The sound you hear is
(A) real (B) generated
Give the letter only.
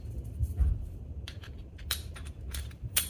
B